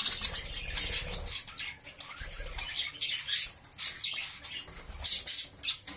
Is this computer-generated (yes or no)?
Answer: no